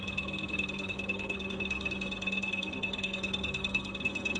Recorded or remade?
remade